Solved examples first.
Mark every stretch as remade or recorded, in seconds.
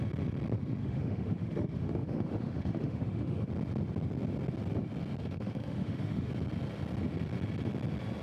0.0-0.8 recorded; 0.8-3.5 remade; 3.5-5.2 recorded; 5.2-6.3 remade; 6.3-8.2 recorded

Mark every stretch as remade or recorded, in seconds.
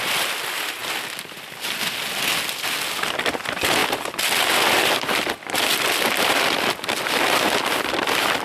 0.0-8.4 recorded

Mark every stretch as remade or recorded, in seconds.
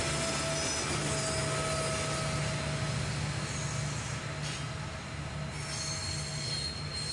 0.0-7.1 recorded